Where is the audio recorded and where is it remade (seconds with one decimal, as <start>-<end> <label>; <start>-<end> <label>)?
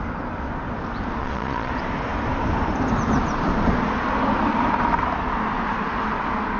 0.0-1.2 recorded; 1.2-1.7 remade; 1.7-6.6 recorded